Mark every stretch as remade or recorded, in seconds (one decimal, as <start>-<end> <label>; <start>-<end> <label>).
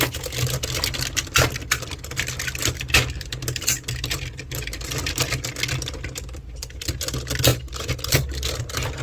0.0-7.5 recorded; 7.5-8.1 remade; 8.1-9.0 recorded